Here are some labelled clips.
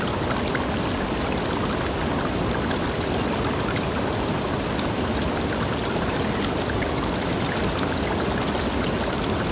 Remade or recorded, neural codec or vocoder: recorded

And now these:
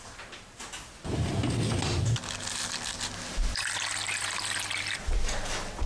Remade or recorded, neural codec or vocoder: recorded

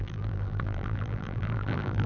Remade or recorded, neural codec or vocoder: remade, vocoder, BigVGAN v2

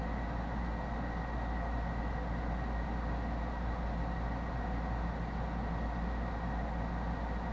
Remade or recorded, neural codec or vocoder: recorded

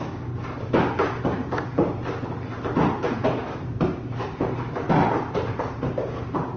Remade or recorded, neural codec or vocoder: remade, vocoder, BigVGAN v2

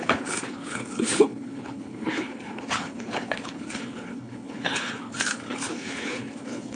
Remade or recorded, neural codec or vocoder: remade, codec, HILCodec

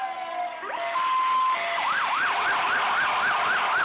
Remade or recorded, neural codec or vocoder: recorded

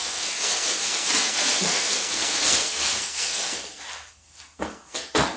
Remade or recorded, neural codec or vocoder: remade, codec, SNAC